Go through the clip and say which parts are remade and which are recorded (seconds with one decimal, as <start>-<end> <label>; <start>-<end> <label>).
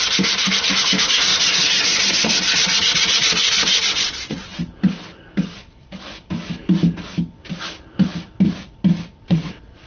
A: 0.0-1.3 recorded; 1.3-4.6 remade; 4.6-9.2 recorded; 9.2-9.9 remade